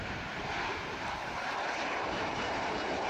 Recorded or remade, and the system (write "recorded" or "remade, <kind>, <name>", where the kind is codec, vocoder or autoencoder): remade, vocoder, BigVGAN v2